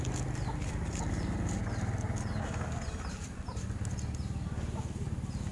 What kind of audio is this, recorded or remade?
recorded